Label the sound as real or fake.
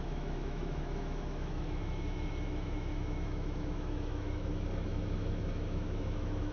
fake